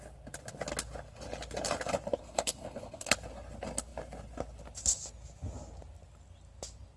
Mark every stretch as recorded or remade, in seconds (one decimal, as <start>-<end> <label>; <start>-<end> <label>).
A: 0.0-2.2 recorded; 2.2-3.1 remade; 3.1-7.0 recorded